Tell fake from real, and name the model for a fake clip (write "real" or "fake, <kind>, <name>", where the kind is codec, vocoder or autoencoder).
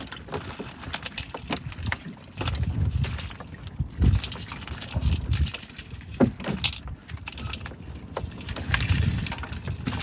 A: real